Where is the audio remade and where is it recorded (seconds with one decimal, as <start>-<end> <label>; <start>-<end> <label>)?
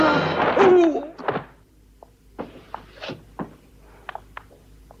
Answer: 0.0-5.0 recorded